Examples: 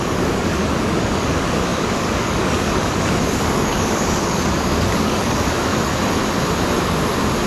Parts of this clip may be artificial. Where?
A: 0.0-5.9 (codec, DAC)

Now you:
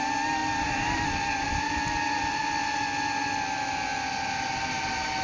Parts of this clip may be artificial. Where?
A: none